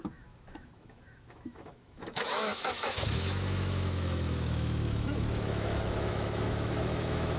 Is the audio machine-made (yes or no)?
yes